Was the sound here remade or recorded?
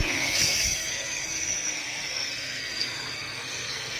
remade